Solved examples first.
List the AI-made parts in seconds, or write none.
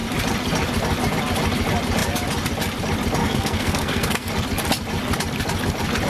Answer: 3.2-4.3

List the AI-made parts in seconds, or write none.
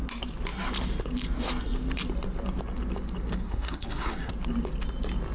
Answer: 3.4-4.3